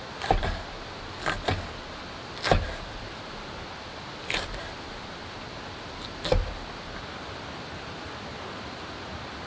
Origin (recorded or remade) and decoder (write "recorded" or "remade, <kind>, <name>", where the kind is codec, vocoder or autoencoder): recorded